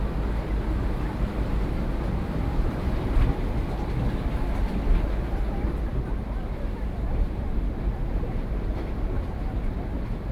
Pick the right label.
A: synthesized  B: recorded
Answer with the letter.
B